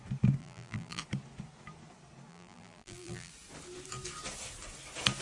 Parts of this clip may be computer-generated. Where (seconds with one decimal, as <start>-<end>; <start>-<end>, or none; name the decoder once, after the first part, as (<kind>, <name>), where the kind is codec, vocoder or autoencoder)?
0.4-1.0 (vocoder, BigVGAN v2); 2.3-3.3